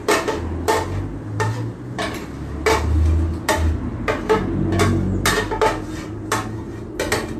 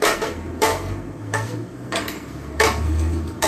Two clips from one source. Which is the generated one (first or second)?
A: second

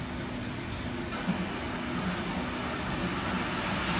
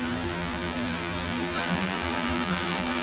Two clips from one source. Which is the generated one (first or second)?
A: second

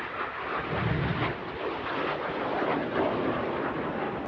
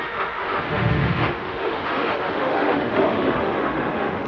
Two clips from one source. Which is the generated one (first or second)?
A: second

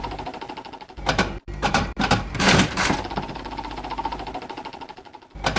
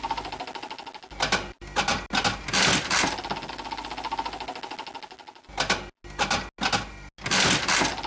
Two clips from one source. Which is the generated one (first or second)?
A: first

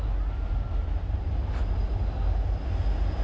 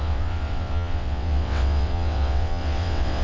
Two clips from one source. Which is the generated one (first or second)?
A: second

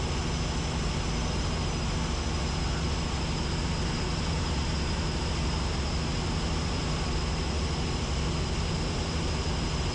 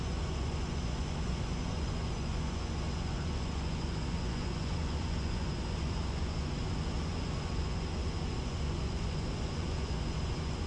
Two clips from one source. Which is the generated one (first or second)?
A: second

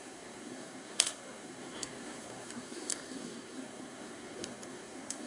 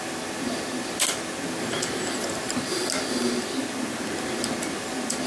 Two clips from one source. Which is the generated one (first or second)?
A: first